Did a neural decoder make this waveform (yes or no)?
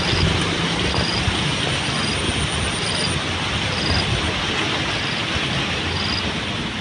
no